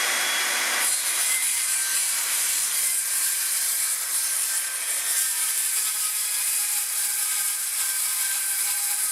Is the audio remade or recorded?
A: remade